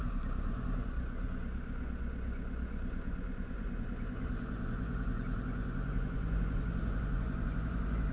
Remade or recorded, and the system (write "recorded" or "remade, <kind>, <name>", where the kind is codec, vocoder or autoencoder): remade, vocoder, Vocos